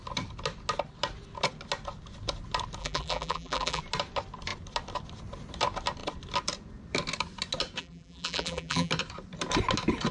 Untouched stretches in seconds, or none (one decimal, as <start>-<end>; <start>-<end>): 0.0-2.8; 3.8-7.8; 8.9-10.1